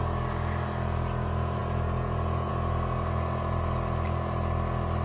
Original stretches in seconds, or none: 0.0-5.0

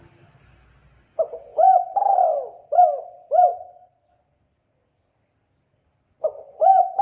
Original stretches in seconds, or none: 0.0-3.5; 4.1-7.0

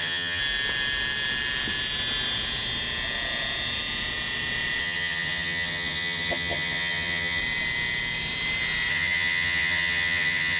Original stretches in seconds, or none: 0.4-4.8; 7.4-8.9

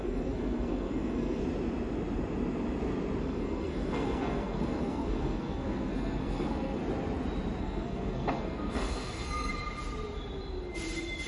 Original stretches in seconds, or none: 1.4-3.2; 6.8-7.6; 9.5-11.3

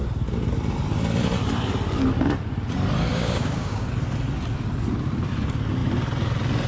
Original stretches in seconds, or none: 0.0-3.1; 3.9-6.7

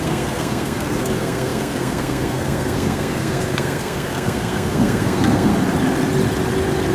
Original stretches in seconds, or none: 5.5-6.9

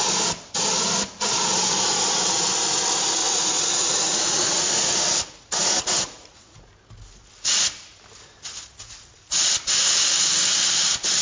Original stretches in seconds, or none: 0.0-3.2; 6.7-11.2